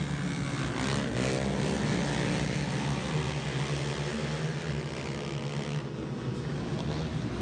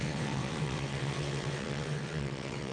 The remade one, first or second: second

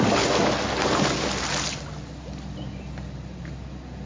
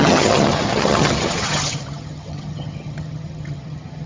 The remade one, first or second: second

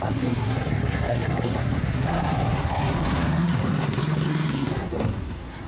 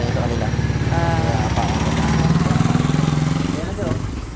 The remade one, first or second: first